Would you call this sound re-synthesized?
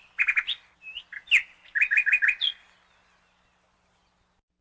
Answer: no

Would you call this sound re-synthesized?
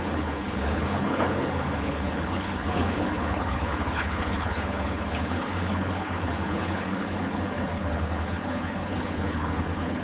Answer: yes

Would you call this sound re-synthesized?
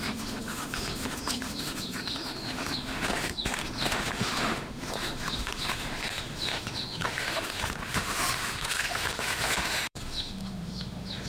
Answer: yes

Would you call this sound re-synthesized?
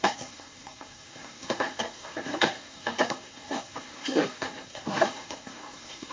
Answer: yes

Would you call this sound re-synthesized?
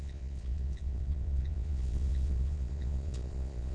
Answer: yes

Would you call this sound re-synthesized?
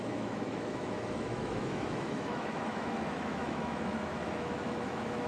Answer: yes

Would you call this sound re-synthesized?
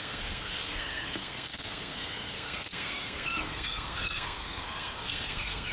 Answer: yes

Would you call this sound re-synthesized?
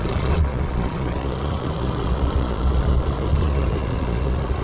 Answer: yes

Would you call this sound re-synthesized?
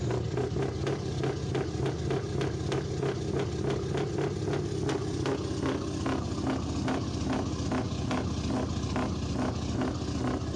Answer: no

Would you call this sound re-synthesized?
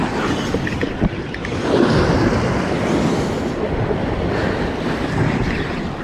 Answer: no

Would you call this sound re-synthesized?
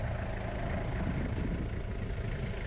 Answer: no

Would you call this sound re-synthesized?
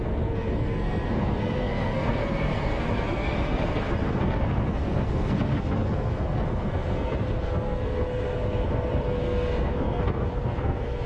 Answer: yes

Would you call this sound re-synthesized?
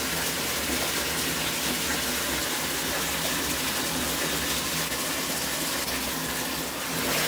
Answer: no